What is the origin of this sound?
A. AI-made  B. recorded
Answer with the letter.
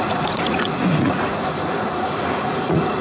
A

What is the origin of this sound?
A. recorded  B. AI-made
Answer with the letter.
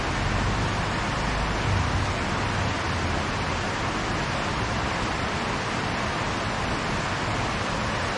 A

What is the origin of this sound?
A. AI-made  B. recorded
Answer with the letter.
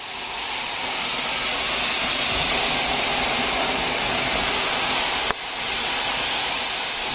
B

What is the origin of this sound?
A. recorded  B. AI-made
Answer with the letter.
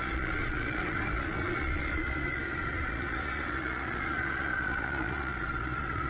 B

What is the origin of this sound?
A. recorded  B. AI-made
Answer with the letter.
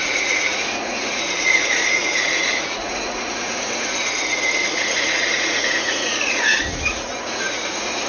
B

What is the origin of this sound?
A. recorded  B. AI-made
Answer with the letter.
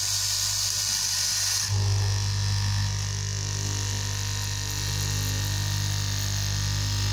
A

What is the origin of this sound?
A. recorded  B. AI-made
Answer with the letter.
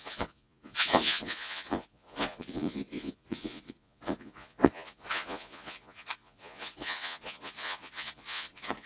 B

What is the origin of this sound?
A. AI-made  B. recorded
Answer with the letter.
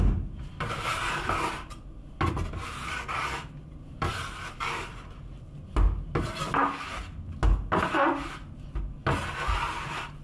B